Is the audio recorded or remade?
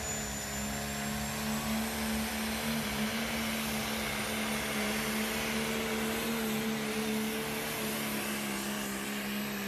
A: recorded